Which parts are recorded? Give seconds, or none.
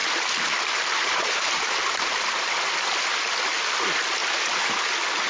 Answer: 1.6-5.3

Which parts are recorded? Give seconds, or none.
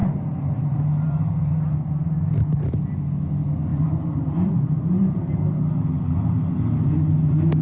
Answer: 2.8-3.7; 5.3-7.6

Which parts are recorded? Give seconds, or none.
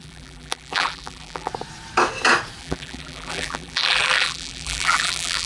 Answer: 1.5-2.6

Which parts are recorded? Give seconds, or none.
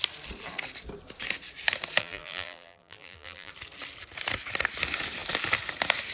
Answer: 0.0-2.0; 3.5-6.1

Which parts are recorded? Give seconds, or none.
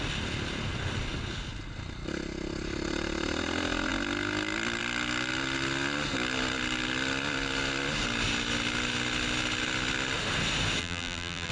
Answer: 0.0-10.8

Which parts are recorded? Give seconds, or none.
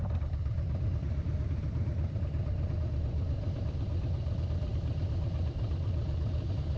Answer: none